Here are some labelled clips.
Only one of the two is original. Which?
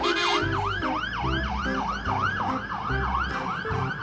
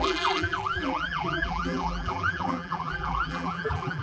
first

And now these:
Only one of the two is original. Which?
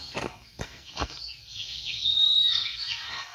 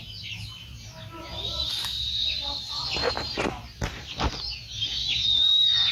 second